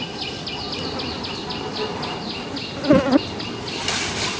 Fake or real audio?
real